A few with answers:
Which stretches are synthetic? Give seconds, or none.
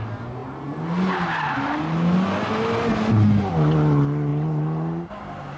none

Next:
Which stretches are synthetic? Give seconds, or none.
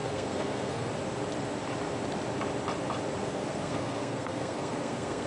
0.0-0.9 (codec, SNAC); 3.2-5.3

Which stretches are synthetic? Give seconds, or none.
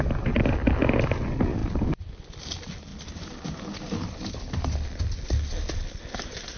none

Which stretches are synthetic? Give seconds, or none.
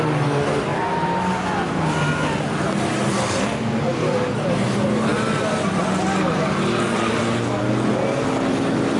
none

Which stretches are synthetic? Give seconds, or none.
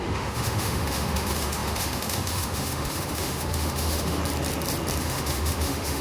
0.0-4.2 (autoencoder, DAC-VAE); 5.0-6.0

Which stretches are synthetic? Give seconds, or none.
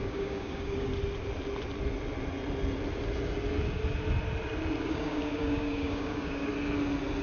0.0-0.9 (codec, DAC); 4.8-6.5